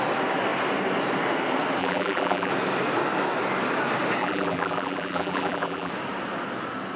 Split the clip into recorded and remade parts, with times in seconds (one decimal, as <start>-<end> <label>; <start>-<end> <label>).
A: 0.0-1.8 recorded; 1.8-2.5 remade; 2.5-4.2 recorded; 4.2-5.9 remade; 5.9-7.0 recorded